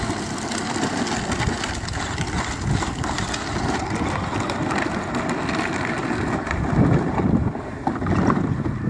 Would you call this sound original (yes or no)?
yes